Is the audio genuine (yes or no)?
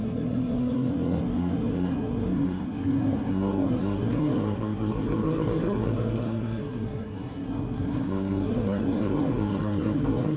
no